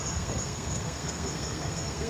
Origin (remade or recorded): remade